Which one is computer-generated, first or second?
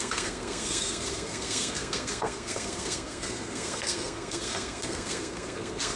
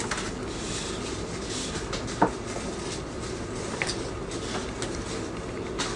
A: first